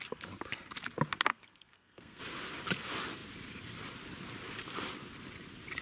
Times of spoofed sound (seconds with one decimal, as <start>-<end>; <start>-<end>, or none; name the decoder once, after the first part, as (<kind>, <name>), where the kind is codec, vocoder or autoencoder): 1.3-2.2 (codec, SNAC)